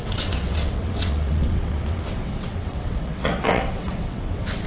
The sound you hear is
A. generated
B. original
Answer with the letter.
A